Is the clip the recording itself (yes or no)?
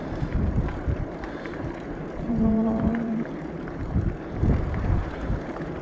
no